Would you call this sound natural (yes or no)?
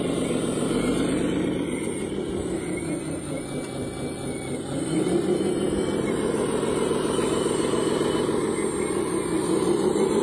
yes